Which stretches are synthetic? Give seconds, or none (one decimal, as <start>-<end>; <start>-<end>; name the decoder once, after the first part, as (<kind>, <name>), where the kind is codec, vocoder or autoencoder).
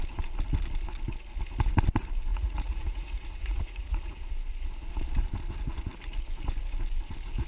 2.3-4.3 (vocoder, Vocos)